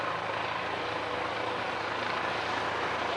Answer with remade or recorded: recorded